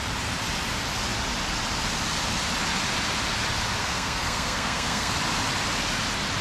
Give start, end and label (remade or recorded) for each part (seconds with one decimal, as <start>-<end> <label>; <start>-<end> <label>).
0.0-3.8 recorded; 3.8-5.1 remade; 5.1-6.4 recorded